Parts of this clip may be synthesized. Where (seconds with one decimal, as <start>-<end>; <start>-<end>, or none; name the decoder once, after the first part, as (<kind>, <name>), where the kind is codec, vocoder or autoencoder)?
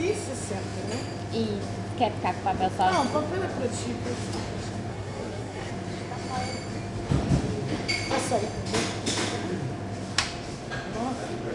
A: 4.9-5.7 (codec, SNAC)